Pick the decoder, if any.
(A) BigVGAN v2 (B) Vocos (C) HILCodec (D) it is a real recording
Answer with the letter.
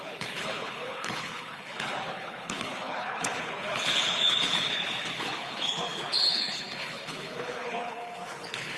C